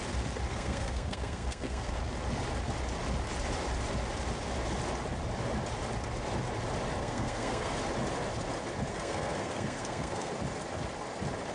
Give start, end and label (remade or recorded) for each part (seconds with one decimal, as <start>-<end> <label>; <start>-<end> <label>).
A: 0.0-0.5 recorded; 0.5-2.0 remade; 2.0-7.0 recorded; 7.0-7.7 remade; 7.7-8.9 recorded; 8.9-10.3 remade; 10.3-11.5 recorded